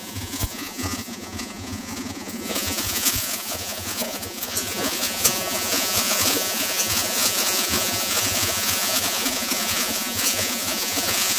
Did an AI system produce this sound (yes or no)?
yes